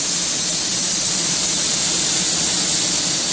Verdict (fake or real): real